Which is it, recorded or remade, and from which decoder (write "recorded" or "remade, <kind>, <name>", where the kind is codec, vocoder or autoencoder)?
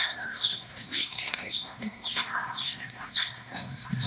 remade, codec, SNAC